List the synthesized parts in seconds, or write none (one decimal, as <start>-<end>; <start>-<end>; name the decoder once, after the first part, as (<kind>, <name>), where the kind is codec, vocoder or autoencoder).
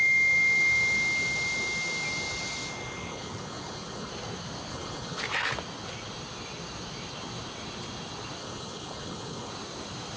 3.1-4.1 (codec, HILCodec); 4.7-5.2; 8.4-9.5